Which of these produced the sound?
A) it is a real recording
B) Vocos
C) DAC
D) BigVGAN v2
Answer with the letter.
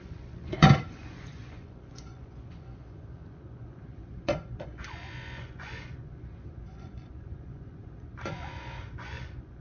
B